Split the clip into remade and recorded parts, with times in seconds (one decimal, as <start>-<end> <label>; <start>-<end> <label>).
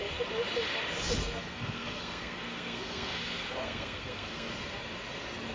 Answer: 0.0-1.2 recorded; 1.2-4.5 remade; 4.5-5.5 recorded